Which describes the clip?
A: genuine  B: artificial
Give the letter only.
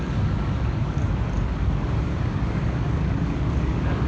B